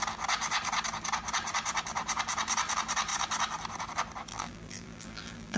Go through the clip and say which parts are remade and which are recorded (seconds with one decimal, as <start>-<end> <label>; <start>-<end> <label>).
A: 0.0-4.3 recorded; 4.3-5.6 remade